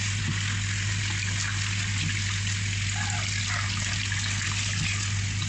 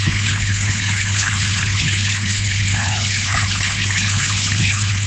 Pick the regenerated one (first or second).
second